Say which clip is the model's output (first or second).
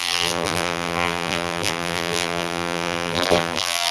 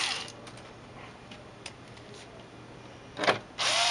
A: first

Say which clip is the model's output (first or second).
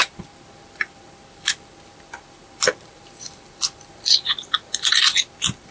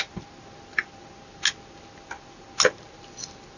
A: first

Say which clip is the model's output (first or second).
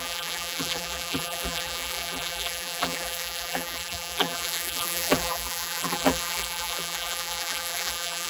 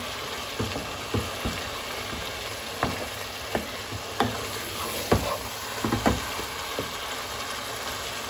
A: first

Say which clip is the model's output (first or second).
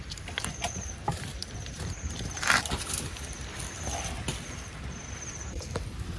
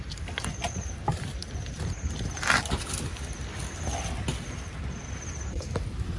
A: first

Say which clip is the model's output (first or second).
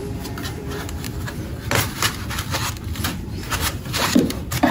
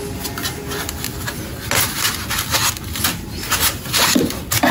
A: first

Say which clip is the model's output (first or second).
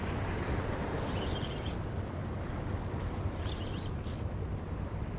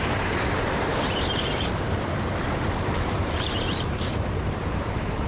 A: second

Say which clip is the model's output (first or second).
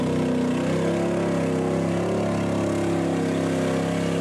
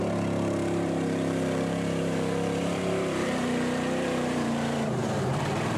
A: second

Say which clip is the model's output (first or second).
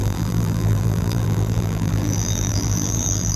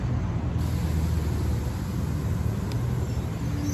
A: first